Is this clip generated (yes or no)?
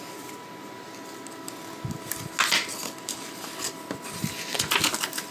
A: no